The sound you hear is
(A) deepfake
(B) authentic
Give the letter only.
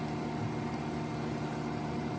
B